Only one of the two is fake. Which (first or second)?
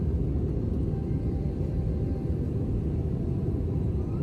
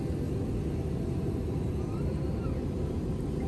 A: first